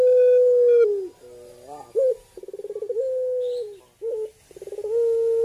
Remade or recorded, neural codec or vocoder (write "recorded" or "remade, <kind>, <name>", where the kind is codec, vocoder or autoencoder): recorded